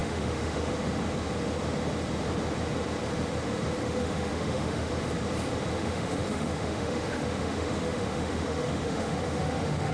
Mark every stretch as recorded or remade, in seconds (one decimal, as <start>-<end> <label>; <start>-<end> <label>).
0.0-0.7 remade; 0.7-3.8 recorded; 3.8-4.9 remade; 4.9-5.7 recorded; 5.7-9.9 remade